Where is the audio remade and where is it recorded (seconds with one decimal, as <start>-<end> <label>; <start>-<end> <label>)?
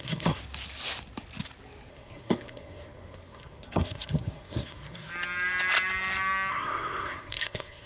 0.0-0.4 remade; 0.4-1.9 recorded; 1.9-5.1 remade; 5.1-6.5 recorded; 6.5-7.9 remade